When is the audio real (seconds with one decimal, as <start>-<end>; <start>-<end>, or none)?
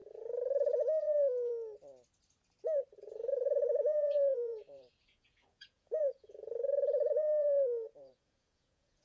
1.5-2.9